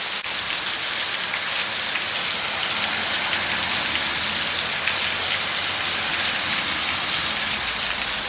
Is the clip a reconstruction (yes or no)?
no